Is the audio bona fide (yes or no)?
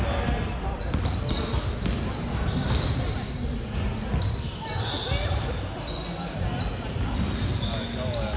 yes